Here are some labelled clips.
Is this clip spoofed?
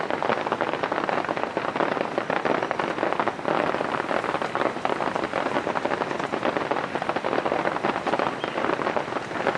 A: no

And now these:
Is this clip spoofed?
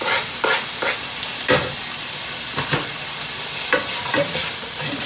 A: no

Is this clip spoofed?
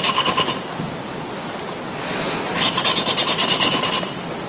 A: no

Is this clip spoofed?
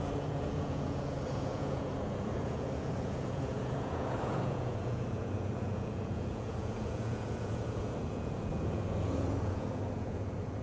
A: yes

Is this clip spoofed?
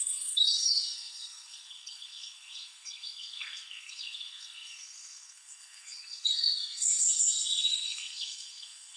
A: yes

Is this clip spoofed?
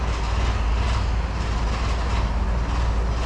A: no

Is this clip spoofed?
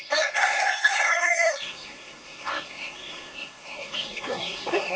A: yes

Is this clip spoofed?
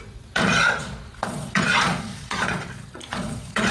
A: yes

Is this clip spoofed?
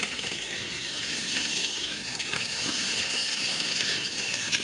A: yes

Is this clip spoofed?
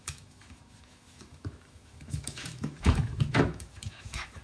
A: yes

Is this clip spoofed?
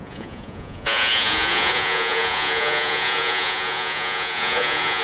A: yes